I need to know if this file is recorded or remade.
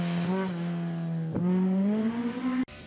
recorded